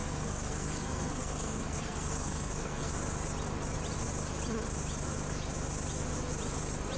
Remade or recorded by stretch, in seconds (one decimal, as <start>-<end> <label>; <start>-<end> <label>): 0.0-2.9 remade; 2.9-7.0 recorded